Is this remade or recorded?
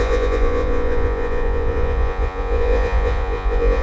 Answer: remade